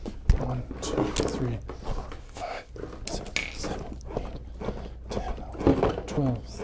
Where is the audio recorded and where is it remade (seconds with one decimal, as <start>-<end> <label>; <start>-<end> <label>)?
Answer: 0.0-2.2 recorded; 2.2-2.7 remade; 2.7-6.6 recorded